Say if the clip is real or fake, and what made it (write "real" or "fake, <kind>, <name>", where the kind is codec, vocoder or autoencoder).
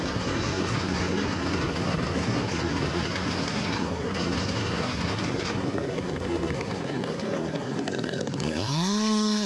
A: fake, codec, SNAC